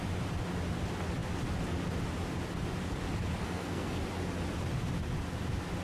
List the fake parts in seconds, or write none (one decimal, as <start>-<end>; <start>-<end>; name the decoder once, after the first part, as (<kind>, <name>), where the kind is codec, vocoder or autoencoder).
3.4-4.0 (codec, SNAC)